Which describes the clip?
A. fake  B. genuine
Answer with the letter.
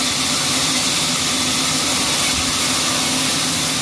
B